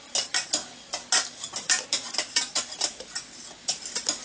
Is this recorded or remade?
recorded